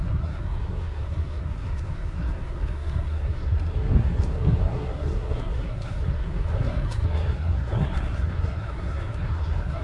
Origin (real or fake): fake